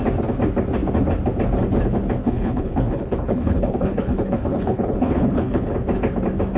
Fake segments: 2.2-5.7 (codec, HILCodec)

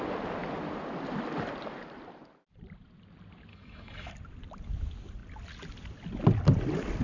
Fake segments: 3.5-4.1 (autoencoder, DAC-VAE)

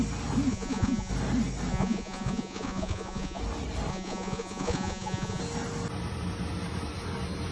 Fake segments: 0.5-1.1 (vocoder, Vocos); 1.7-3.4; 3.9-5.4

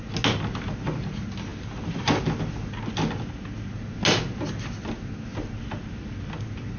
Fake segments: none

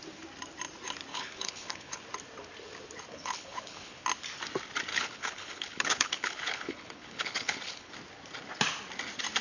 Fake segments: 1.1-2.0 (codec, HILCodec); 3.1-4.0; 4.9-7.9

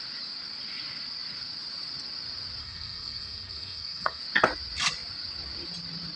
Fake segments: 2.6-4.2 (codec, SNAC)

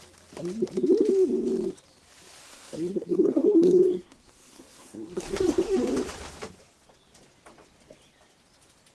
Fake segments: 2.4-5.9 (codec, SNAC)